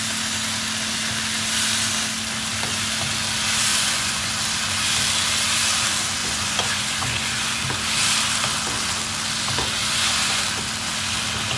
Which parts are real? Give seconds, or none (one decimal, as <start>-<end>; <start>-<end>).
0.0-3.7; 4.3-6.2; 7.6-9.8; 10.4-11.6